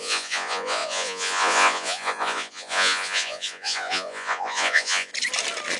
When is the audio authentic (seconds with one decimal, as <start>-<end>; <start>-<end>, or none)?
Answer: 5.1-5.8